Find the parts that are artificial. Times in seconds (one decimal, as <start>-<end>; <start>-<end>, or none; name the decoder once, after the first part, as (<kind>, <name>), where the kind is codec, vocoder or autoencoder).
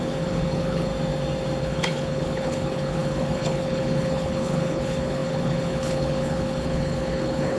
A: 0.0-0.9 (codec, HILCodec); 1.6-7.6